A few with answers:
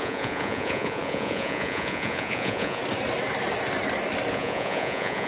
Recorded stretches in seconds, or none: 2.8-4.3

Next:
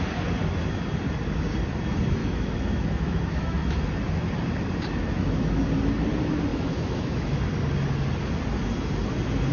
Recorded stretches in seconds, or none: 0.0-2.2; 3.9-5.0; 5.6-6.5; 7.4-9.5

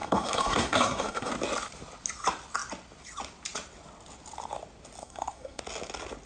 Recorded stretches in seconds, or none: 1.3-5.0; 5.6-6.3